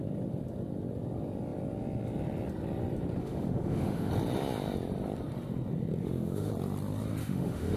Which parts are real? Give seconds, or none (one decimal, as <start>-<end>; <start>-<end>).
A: 0.0-3.2; 4.1-6.0; 6.5-7.2